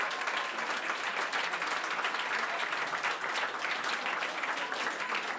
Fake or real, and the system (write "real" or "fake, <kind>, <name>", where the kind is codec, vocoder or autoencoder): real